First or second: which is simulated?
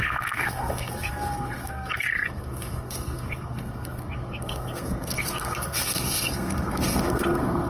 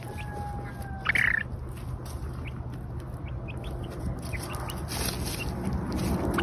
first